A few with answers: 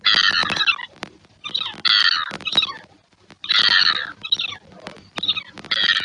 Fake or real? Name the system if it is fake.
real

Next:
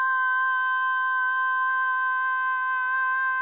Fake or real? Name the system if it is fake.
real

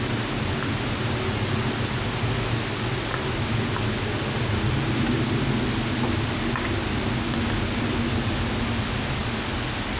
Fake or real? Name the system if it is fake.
real